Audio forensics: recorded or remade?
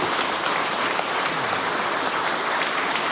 recorded